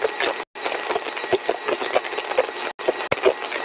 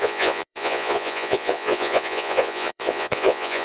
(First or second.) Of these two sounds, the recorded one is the first